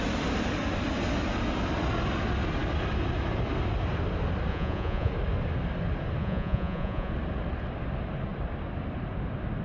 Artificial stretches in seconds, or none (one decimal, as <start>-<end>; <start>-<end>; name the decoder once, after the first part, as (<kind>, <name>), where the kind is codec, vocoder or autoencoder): 4.5-5.1 (vocoder, Vocos); 6.2-7.1